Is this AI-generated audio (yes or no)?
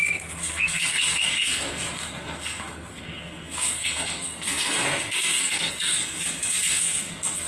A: yes